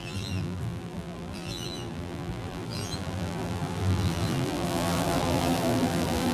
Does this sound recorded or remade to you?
remade